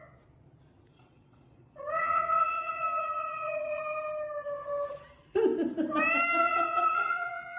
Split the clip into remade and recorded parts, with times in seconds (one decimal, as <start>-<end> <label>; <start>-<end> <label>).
0.0-0.9 recorded; 0.9-3.8 remade; 3.8-6.4 recorded; 6.4-7.6 remade